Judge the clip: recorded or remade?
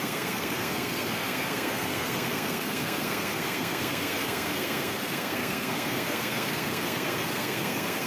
remade